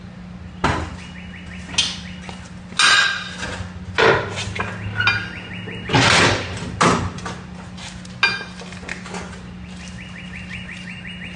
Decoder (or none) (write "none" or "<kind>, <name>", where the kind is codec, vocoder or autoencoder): none